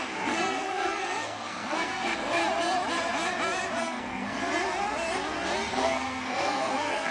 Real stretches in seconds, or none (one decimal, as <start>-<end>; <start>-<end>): 2.4-3.8; 4.4-5.7